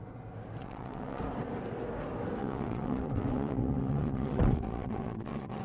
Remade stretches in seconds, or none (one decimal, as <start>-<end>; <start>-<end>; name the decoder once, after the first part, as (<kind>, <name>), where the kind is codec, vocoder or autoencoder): 0.6-1.2 (vocoder, WaveNeXt); 2.4-5.6